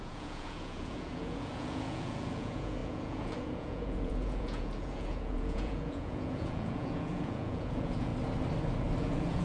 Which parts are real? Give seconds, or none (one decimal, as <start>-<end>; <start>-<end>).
8.1-9.0